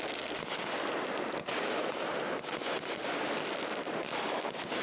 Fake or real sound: fake